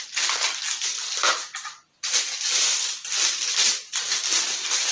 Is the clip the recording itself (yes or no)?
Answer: no